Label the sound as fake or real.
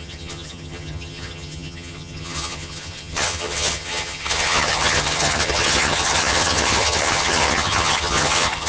fake